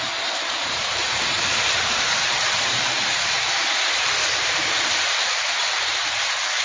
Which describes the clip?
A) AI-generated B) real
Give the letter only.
A